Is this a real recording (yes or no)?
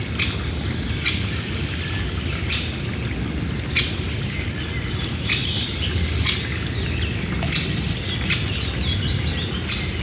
yes